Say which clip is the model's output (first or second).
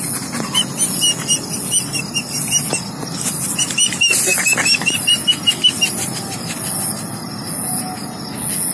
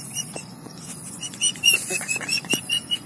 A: second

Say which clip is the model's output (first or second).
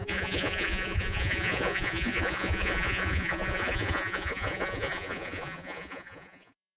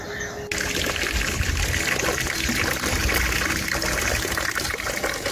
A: first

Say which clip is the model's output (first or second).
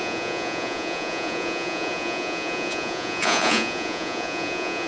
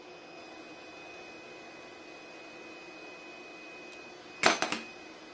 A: first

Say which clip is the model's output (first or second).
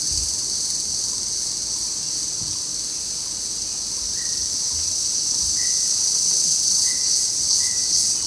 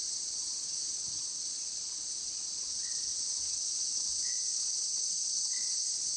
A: second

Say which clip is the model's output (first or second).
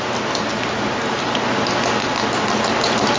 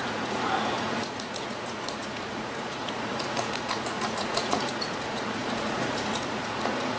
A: second